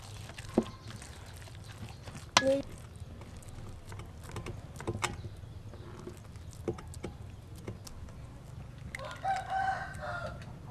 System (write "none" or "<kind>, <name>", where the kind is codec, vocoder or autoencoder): none